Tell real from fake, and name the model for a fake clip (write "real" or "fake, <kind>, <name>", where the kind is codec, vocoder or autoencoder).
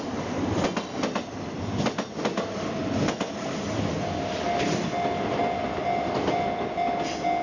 real